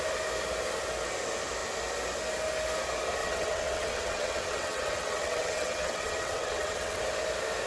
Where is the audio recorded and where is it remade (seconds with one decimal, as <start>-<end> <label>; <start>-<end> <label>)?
0.0-3.2 recorded; 3.2-7.0 remade; 7.0-7.7 recorded